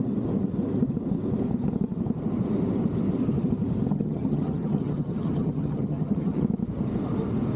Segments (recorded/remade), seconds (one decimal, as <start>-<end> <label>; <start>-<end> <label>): 0.0-3.9 recorded; 3.9-6.4 remade; 6.4-7.6 recorded